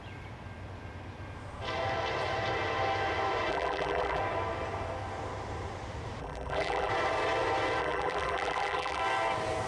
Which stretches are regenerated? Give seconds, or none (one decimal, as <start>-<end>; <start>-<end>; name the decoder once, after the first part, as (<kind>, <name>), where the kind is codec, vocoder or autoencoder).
3.5-4.2 (vocoder, BigVGAN v2); 6.2-6.9; 7.8-9.0